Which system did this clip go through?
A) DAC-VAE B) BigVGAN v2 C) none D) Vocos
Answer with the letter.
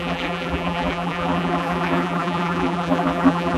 B